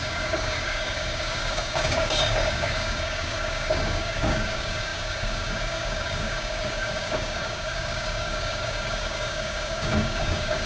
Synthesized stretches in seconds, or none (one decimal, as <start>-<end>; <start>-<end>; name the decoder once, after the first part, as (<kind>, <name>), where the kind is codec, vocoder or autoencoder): 0.0-10.7 (codec, DAC)